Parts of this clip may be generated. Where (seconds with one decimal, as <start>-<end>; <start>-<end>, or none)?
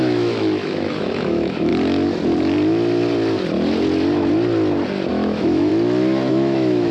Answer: 0.0-1.7; 5.1-5.7; 6.3-6.9